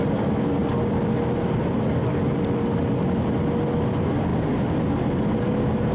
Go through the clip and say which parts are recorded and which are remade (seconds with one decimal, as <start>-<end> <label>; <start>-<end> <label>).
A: 0.0-0.6 recorded; 0.6-2.6 remade; 2.6-5.9 recorded